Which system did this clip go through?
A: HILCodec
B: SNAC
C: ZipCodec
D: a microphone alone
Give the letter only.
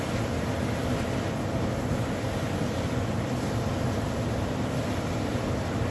D